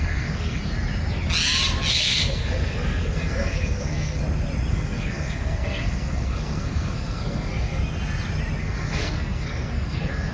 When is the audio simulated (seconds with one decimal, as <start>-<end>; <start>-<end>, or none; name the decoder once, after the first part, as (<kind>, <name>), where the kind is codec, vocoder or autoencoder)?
0.0-0.6 (codec, SNAC); 1.9-4.2; 4.7-7.8; 8.6-10.3